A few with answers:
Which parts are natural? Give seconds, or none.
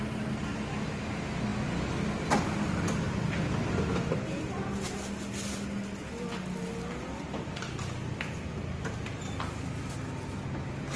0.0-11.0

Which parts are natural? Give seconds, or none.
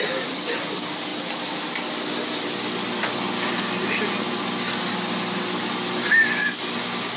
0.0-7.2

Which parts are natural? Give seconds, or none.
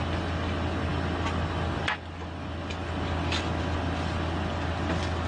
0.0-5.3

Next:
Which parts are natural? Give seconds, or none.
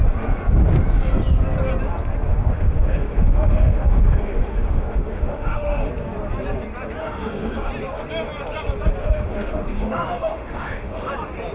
0.0-2.3; 5.9-7.0; 7.7-9.0; 11.1-11.5